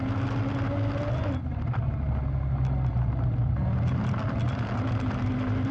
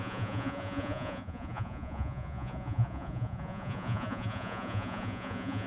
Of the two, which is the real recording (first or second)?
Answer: first